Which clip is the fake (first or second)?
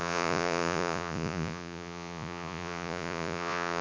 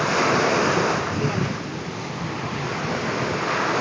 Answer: first